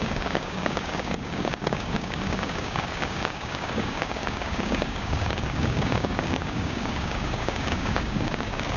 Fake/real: fake